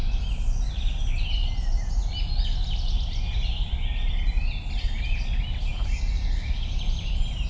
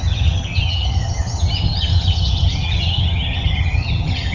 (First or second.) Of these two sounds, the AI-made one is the second